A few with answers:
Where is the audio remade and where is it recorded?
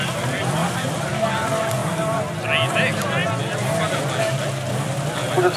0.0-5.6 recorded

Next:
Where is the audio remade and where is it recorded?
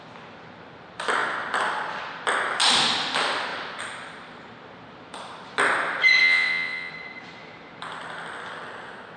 0.0-6.2 recorded; 6.2-6.9 remade; 6.9-9.2 recorded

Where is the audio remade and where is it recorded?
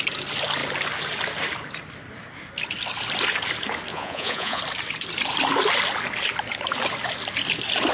0.0-3.9 recorded; 3.9-4.6 remade; 4.6-7.9 recorded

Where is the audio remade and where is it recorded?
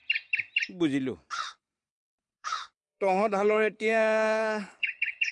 0.0-1.3 recorded; 1.3-5.3 remade